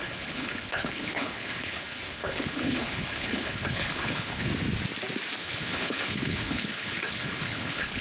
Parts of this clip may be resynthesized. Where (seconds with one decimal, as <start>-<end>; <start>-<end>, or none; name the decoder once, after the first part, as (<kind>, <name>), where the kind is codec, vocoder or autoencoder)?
0.0-4.5 (codec, HILCodec); 5.4-8.0